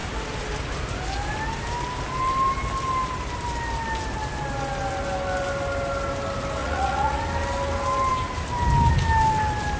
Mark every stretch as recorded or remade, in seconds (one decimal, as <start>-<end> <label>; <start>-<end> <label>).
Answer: 0.0-6.6 recorded; 6.6-7.2 remade; 7.2-9.8 recorded